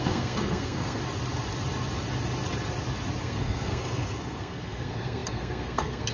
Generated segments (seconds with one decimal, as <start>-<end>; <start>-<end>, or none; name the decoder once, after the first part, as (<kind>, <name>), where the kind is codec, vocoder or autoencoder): 0.0-1.0 (codec, SNAC); 3.2-6.1